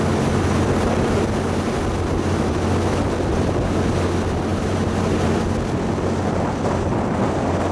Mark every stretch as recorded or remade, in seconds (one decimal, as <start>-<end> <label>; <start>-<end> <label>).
0.0-4.5 recorded; 4.5-5.0 remade; 5.0-7.7 recorded